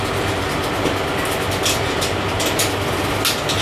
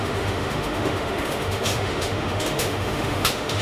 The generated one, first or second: second